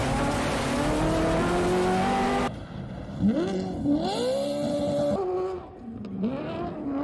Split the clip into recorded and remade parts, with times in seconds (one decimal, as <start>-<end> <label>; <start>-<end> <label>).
0.0-7.0 recorded